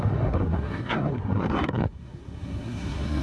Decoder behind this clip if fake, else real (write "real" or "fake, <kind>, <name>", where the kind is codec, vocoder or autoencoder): fake, codec, SNAC